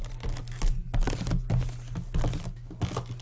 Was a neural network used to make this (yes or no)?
no